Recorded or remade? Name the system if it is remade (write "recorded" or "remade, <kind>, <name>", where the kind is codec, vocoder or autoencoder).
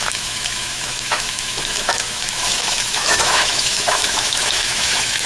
remade, autoencoder, DAC-VAE